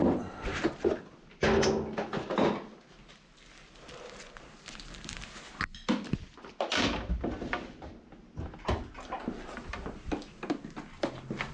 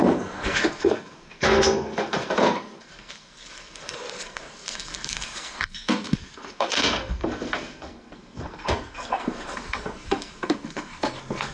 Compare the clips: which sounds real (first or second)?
first